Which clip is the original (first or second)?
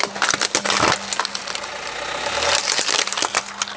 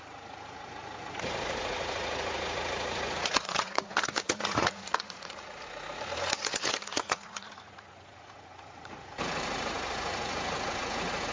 first